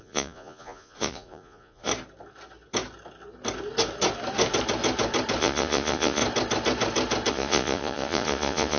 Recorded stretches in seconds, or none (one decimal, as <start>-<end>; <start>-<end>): 1.9-5.4; 6.2-7.3